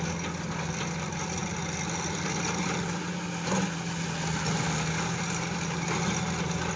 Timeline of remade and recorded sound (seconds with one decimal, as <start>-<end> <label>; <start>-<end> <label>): 0.0-6.8 recorded

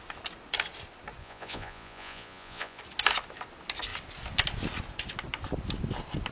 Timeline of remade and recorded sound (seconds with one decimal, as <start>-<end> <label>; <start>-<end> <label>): 0.0-1.2 recorded; 1.2-2.8 remade; 2.8-6.3 recorded

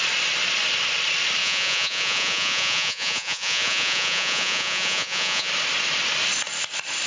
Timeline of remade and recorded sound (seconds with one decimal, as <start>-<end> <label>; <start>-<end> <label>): 0.0-1.4 recorded; 1.4-5.5 remade; 5.5-7.1 recorded

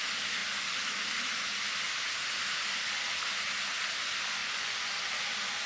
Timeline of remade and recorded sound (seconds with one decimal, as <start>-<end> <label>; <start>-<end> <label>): 0.0-4.4 recorded; 4.4-4.9 remade; 4.9-5.7 recorded

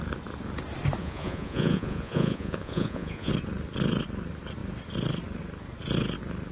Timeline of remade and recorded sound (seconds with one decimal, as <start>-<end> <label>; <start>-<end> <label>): 0.0-1.0 recorded; 1.0-3.3 remade; 3.3-6.5 recorded

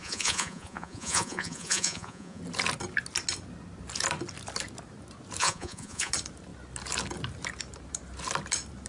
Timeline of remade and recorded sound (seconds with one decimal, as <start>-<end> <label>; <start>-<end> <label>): 0.0-2.4 remade; 2.4-5.4 recorded; 5.4-6.1 remade; 6.1-8.9 recorded